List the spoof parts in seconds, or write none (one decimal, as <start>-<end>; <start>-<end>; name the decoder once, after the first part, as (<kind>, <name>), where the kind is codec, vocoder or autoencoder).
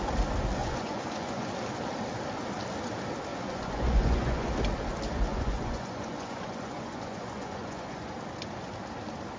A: 0.6-1.5 (vocoder, Vocos); 3.3-4.5; 5.3-8.1